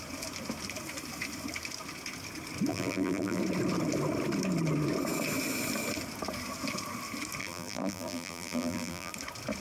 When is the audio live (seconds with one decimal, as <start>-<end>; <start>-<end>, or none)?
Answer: 0.0-2.7; 3.4-7.4; 9.1-9.6